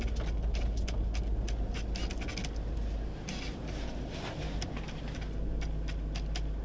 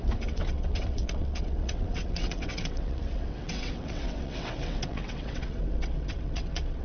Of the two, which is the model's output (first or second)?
second